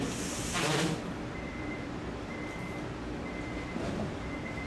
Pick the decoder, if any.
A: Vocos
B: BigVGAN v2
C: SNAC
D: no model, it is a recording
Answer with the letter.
B